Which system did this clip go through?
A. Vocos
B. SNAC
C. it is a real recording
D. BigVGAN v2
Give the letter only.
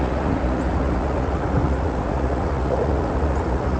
A